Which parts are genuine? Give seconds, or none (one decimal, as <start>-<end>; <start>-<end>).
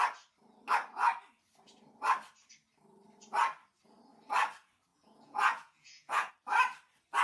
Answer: 0.0-4.9; 6.3-7.2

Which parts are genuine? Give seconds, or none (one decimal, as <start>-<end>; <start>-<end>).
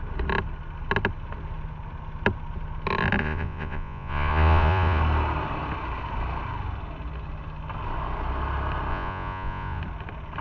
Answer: 0.0-3.2; 5.0-8.9; 9.8-10.4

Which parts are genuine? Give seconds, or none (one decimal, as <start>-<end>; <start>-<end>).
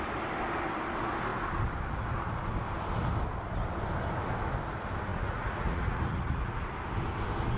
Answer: 0.0-5.1; 6.7-7.6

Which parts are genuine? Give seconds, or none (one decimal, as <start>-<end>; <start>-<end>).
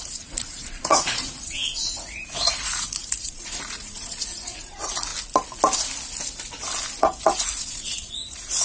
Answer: 5.1-7.0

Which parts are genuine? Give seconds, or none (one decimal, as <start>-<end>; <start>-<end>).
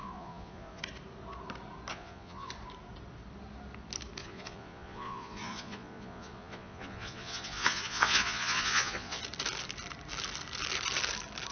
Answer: 0.8-1.9; 2.5-4.2; 9.2-11.5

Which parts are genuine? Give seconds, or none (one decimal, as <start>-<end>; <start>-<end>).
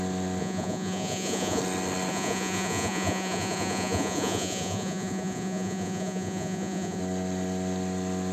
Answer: 0.0-0.4; 1.6-2.1; 7.0-8.3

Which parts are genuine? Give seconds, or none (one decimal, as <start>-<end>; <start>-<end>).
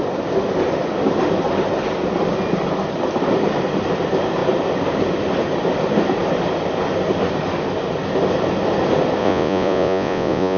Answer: 0.0-9.2